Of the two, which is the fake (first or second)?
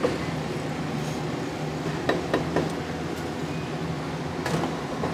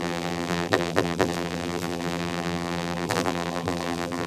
second